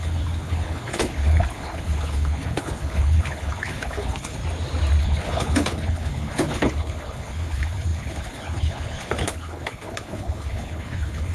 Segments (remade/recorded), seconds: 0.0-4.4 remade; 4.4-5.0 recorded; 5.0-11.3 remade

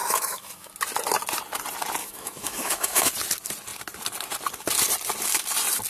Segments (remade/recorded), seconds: 0.0-0.7 remade; 0.7-2.0 recorded; 2.0-3.1 remade; 3.1-5.9 recorded

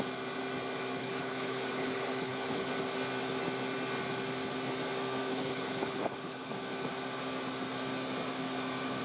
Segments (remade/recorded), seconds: 0.0-1.0 recorded; 1.0-2.7 remade; 2.7-5.3 recorded; 5.3-6.5 remade; 6.5-9.0 recorded

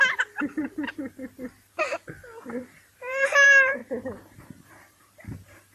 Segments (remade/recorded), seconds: 0.0-0.9 remade; 0.9-2.5 recorded; 2.5-3.8 remade; 3.8-4.6 recorded; 4.6-5.7 remade

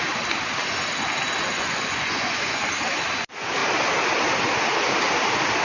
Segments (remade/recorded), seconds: 0.0-1.4 recorded; 1.4-2.6 remade; 2.6-5.6 recorded